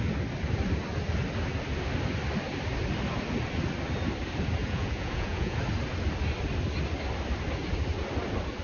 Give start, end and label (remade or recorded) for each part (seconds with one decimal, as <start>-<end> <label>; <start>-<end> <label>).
0.0-4.6 recorded; 4.6-5.6 remade; 5.6-8.6 recorded